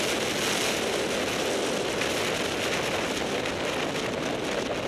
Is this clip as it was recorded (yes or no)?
yes